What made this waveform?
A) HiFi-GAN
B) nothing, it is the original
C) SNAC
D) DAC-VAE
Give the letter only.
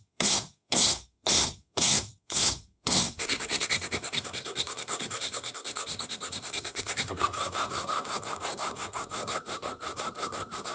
C